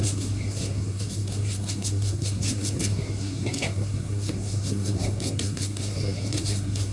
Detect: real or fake fake